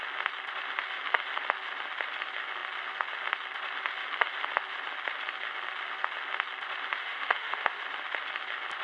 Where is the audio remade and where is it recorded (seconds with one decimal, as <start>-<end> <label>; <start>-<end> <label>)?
0.0-7.0 recorded; 7.0-7.8 remade; 7.8-8.8 recorded